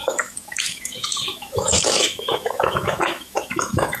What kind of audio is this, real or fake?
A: fake